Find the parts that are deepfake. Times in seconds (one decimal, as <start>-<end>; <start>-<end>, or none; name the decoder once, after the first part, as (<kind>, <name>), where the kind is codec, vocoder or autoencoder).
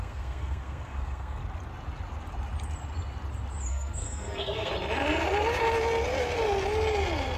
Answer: 0.0-1.4 (codec, SNAC); 3.7-4.7